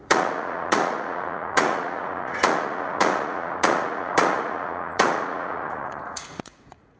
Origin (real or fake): fake